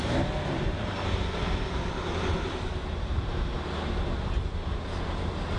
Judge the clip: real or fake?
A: real